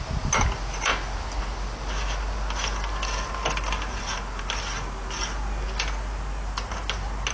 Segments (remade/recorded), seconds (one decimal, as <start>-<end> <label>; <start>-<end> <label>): 0.0-7.3 recorded

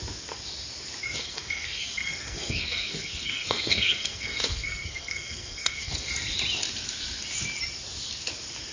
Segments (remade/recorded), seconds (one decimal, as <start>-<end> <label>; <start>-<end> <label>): 0.0-1.2 recorded; 1.2-6.1 remade; 6.1-8.7 recorded

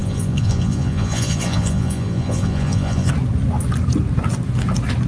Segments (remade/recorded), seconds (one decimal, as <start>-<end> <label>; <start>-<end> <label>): 0.0-3.1 remade; 3.1-5.1 recorded

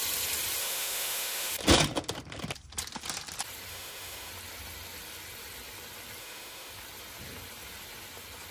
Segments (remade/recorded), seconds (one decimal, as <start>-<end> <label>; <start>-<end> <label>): 0.0-0.6 recorded; 0.6-1.5 remade; 1.5-3.7 recorded; 3.7-4.3 remade; 4.3-6.2 recorded; 6.2-6.7 remade; 6.7-8.5 recorded

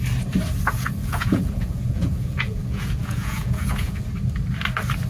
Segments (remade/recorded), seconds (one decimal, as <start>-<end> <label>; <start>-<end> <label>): 0.0-1.0 recorded; 1.0-4.1 remade; 4.1-5.1 recorded

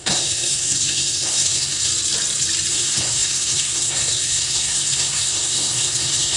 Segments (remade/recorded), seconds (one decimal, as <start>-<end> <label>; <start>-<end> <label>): 0.0-1.9 remade; 1.9-2.7 recorded; 2.7-6.4 remade